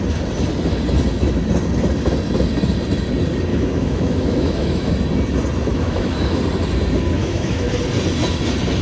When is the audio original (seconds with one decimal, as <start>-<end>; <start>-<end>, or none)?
0.0-3.5; 4.9-5.7; 6.4-7.2; 7.7-8.8